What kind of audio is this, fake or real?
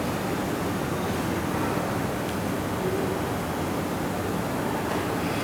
real